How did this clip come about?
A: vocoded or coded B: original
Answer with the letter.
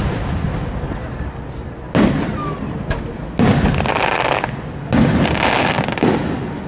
B